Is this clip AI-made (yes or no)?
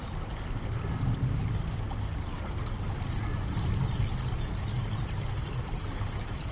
no